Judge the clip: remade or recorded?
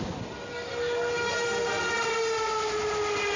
recorded